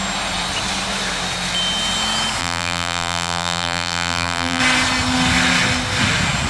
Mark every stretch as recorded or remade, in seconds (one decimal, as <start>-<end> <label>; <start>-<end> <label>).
0.0-2.4 recorded; 2.4-4.6 remade; 4.6-6.5 recorded